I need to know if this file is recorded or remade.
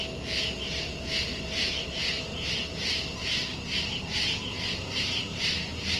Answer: recorded